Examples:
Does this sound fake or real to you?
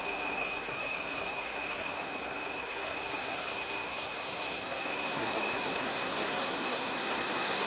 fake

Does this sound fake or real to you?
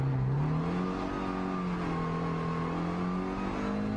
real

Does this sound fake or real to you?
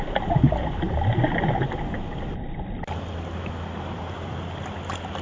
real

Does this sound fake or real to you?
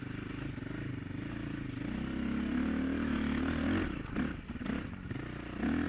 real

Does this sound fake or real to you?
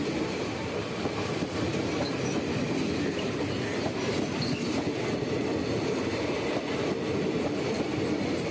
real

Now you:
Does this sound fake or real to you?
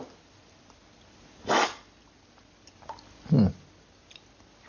real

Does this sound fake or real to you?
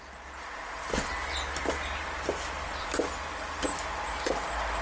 real